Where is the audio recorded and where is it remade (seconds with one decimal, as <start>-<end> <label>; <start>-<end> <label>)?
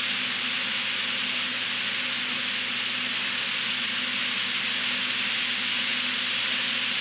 0.0-7.0 recorded